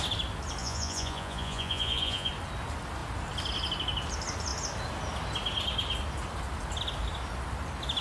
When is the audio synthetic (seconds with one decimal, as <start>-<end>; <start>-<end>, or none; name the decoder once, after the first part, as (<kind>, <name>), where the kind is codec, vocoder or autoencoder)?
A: 0.6-2.3 (vocoder, Vocos)